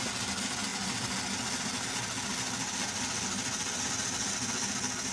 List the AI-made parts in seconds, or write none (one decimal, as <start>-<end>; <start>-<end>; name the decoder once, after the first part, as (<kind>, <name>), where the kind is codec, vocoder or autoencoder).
none